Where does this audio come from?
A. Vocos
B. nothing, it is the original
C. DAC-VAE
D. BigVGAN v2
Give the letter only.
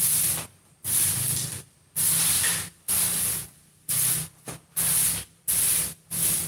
B